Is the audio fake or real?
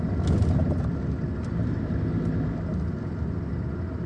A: real